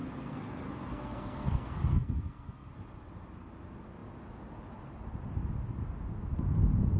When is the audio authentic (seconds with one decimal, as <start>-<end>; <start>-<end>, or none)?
2.7-7.0